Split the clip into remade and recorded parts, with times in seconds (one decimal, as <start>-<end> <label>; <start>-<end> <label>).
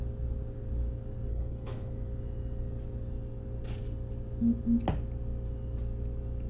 0.0-1.3 recorded; 1.3-1.9 remade; 1.9-6.5 recorded